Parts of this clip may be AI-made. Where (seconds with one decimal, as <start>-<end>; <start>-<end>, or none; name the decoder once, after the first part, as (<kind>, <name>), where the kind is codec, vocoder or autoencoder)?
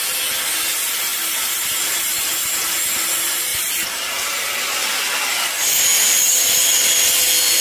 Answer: 1.1-2.7 (vocoder, BigVGAN v2); 3.5-4.5